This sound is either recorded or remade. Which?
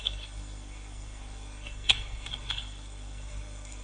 remade